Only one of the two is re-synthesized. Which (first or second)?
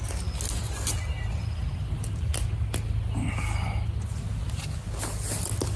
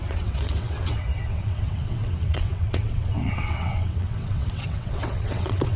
second